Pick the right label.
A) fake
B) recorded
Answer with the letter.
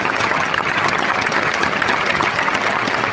A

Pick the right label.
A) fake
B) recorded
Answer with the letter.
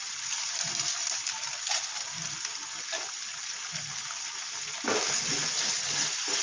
B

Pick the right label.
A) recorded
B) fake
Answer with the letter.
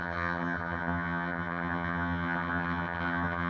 B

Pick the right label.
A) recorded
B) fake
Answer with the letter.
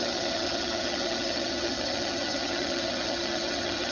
B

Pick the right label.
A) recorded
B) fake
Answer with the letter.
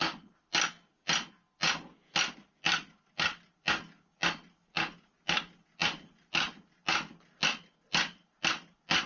A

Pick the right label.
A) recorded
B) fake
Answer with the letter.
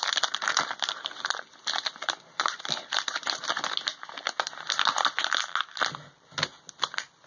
A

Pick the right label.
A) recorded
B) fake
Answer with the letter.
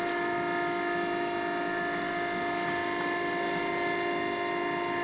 A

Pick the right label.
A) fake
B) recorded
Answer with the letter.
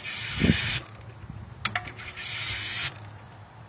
B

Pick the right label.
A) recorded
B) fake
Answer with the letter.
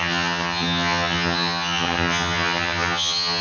B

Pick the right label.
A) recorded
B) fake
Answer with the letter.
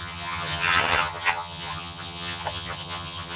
B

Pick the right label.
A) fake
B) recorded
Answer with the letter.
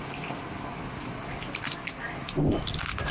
B